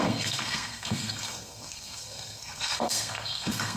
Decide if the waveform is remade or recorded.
remade